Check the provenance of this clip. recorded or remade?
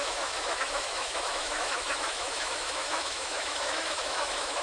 remade